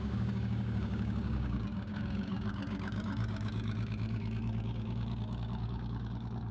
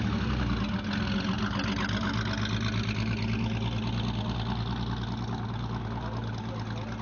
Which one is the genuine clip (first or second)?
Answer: second